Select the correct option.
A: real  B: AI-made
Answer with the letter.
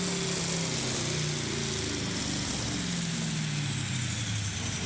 A